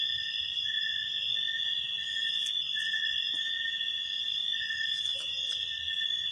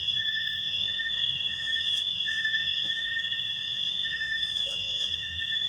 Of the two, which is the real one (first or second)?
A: first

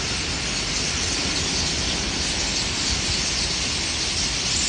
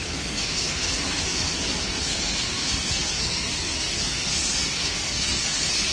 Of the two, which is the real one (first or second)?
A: first